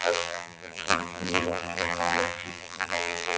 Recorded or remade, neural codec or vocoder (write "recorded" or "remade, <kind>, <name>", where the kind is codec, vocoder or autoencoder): remade, vocoder, BigVGAN v2